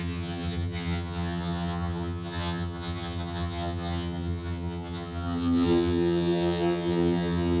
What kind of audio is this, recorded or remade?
remade